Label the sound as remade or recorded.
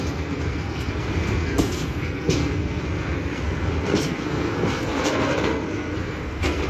remade